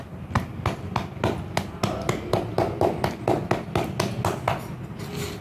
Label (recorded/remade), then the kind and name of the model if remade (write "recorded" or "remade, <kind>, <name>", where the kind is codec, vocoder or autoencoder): recorded